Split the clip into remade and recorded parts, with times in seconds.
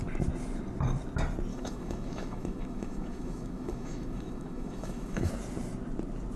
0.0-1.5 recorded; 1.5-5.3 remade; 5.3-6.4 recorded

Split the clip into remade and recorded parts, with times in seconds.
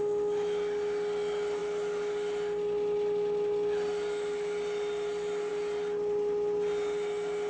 0.0-7.5 recorded